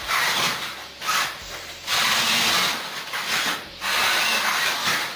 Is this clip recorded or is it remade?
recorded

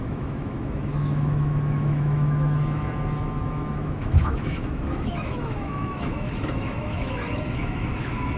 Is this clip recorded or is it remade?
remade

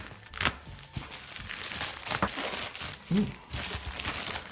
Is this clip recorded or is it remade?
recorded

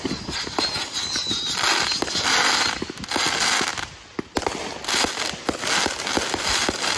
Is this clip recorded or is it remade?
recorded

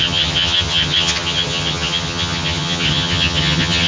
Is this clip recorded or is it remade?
remade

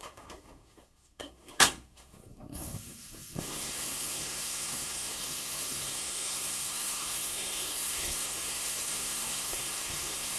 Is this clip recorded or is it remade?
remade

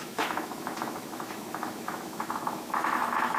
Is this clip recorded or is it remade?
remade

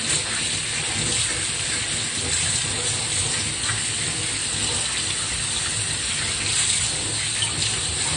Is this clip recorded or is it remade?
recorded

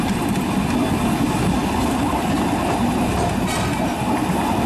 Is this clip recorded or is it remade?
recorded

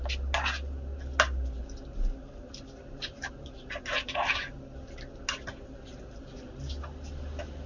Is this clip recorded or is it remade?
recorded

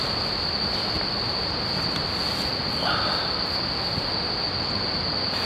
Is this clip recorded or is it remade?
recorded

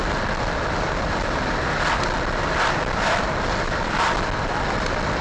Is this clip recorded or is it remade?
remade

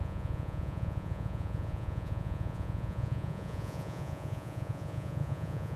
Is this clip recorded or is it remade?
remade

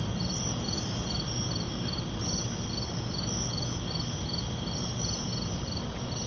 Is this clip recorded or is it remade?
recorded